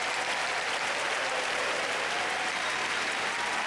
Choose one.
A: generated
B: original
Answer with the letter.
B